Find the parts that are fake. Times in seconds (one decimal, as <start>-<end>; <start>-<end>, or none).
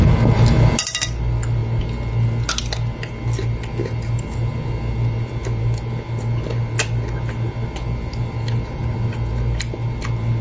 none